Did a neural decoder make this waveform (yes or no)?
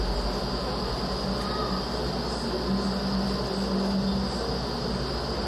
no